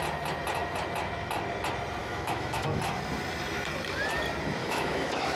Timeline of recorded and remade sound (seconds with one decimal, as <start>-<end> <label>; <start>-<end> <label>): 0.0-2.0 recorded; 2.0-2.8 remade; 2.8-4.6 recorded; 4.6-5.4 remade